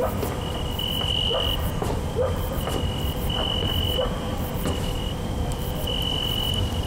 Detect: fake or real fake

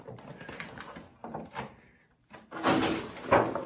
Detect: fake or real real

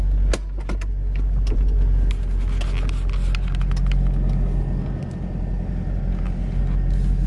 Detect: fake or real real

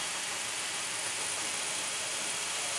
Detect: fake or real fake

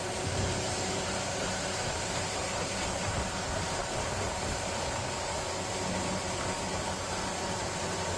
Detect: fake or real fake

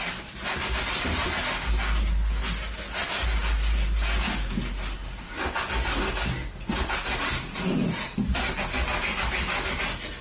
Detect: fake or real real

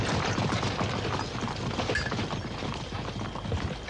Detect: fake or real real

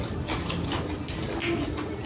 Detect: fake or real real